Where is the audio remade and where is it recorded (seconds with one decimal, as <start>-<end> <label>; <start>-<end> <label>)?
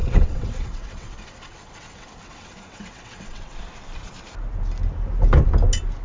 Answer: 0.0-3.6 remade; 3.6-6.0 recorded